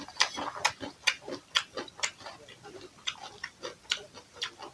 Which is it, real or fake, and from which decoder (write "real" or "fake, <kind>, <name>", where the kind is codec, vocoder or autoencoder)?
fake, vocoder, BigVGAN v2